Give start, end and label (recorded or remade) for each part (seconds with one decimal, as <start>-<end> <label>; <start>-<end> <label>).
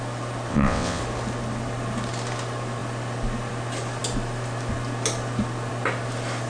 0.0-0.5 recorded; 0.5-1.0 remade; 1.0-6.5 recorded